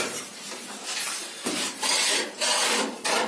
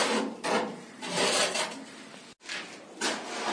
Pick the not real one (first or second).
first